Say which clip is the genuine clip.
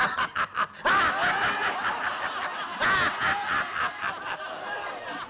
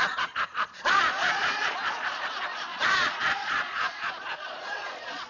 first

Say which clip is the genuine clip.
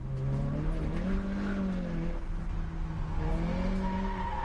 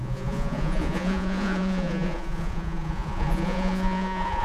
first